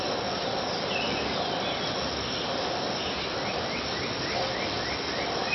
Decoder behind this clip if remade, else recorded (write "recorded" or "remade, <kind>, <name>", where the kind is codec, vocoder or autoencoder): recorded